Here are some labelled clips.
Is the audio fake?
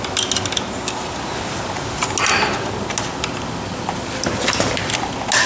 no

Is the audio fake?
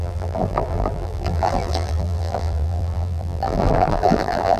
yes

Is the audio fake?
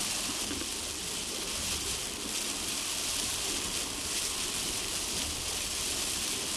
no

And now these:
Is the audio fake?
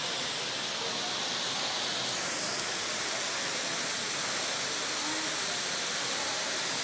no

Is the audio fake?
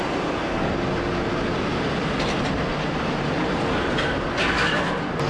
no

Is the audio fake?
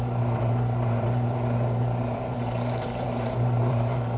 yes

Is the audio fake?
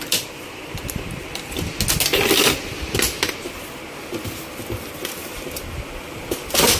no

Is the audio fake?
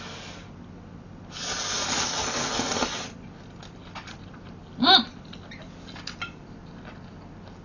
no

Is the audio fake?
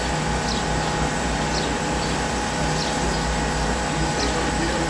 no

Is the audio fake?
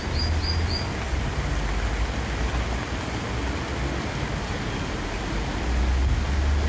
no